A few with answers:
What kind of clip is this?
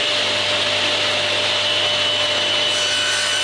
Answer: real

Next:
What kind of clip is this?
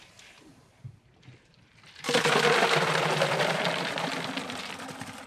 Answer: fake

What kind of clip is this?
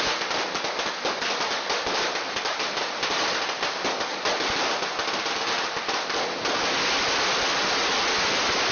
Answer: real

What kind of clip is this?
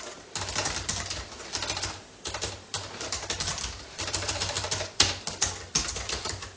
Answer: fake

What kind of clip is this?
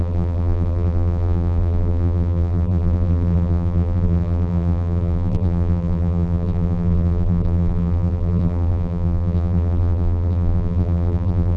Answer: fake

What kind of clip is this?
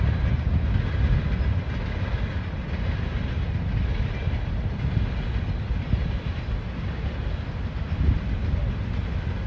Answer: real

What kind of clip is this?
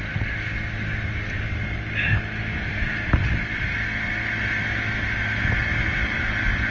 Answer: real